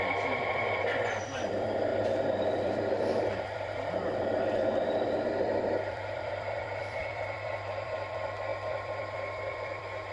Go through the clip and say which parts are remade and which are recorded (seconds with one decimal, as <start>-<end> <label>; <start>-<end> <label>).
0.0-10.1 remade